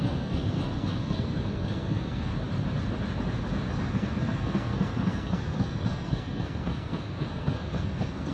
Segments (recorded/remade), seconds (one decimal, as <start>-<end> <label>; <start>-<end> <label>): 0.0-2.3 remade; 2.3-3.8 recorded; 3.8-8.3 remade